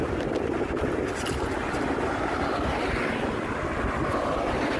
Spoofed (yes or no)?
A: no